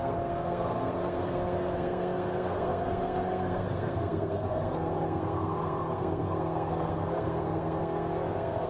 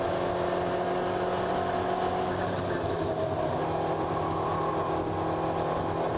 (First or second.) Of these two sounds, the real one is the second